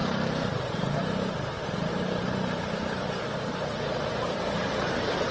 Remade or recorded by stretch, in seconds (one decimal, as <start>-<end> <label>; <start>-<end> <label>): 0.0-3.2 remade; 3.2-5.3 recorded